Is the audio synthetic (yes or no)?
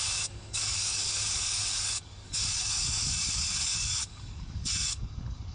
yes